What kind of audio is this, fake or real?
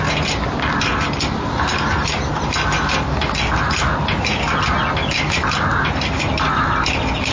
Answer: real